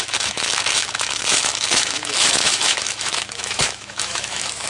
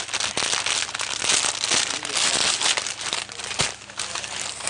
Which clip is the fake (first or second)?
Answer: first